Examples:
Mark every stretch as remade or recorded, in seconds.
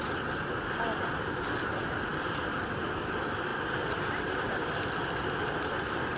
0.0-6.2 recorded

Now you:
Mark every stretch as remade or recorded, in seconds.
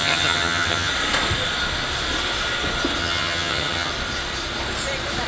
0.0-0.9 remade; 0.9-3.0 recorded; 3.0-3.9 remade; 3.9-5.3 recorded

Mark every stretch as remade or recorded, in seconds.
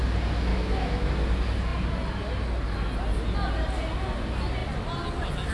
0.0-0.5 recorded; 0.5-1.1 remade; 1.1-5.5 recorded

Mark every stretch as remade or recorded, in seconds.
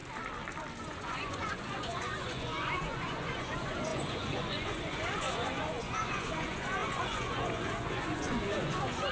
0.0-0.8 recorded; 0.8-9.1 remade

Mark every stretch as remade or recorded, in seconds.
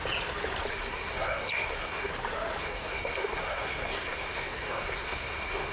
0.0-0.7 recorded; 0.7-2.1 remade; 2.1-2.6 recorded; 2.6-5.7 remade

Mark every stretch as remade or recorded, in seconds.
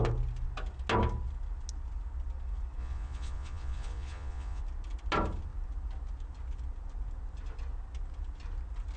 0.0-2.8 recorded; 2.8-4.6 remade; 4.6-9.0 recorded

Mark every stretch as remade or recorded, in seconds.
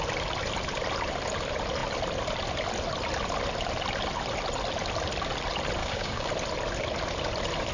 0.0-5.8 recorded; 5.8-6.3 remade; 6.3-7.7 recorded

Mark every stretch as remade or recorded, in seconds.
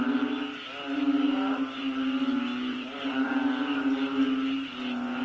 0.0-2.7 recorded; 2.7-3.3 remade; 3.3-5.2 recorded